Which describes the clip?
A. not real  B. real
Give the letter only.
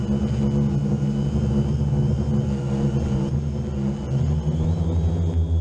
B